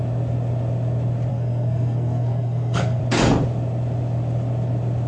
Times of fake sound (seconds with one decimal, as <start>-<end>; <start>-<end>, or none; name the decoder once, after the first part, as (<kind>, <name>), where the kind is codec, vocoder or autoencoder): 1.3-3.0 (codec, SNAC)